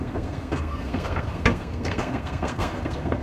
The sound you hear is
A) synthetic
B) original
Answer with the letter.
A